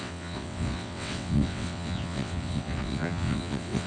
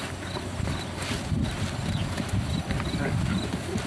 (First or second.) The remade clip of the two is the first